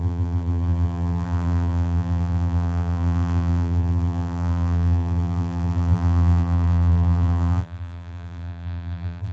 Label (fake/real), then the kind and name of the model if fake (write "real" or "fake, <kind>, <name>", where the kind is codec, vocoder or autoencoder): fake, vocoder, BigVGAN v2